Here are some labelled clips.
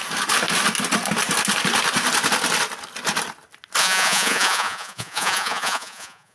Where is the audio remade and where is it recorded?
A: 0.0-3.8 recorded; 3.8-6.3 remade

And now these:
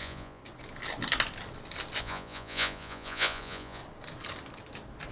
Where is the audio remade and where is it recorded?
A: 0.0-0.4 remade; 0.4-2.0 recorded; 2.0-3.8 remade; 3.8-5.1 recorded

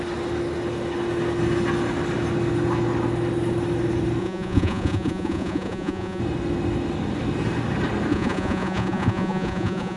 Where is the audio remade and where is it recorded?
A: 0.0-4.2 recorded; 4.2-6.2 remade; 6.2-8.1 recorded; 8.1-10.0 remade

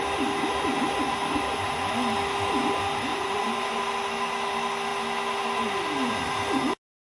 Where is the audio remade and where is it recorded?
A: 0.0-3.1 recorded; 3.1-3.8 remade; 3.8-7.1 recorded

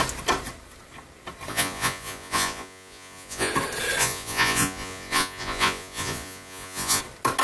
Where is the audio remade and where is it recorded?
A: 0.0-1.5 recorded; 1.5-3.5 remade; 3.5-4.0 recorded; 4.0-7.0 remade; 7.0-7.4 recorded

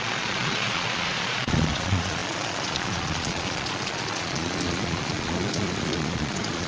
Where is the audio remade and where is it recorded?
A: 0.0-6.7 remade

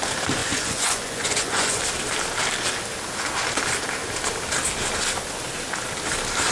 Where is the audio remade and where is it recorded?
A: 0.0-0.4 recorded; 0.4-1.8 remade; 1.8-6.5 recorded

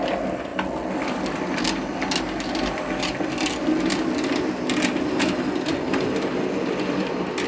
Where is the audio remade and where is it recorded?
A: 0.0-7.5 recorded